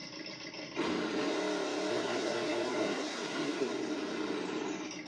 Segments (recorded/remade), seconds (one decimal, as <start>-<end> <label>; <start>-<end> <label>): 0.0-1.9 recorded; 1.9-3.7 remade; 3.7-5.1 recorded